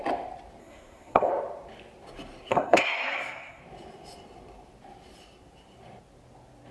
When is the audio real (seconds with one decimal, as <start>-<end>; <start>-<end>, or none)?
0.0-0.6; 1.3-2.5; 3.6-6.7